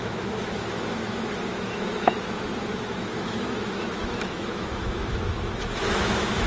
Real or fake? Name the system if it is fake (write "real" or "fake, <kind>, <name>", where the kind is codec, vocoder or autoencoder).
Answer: fake, autoencoder, DAC-VAE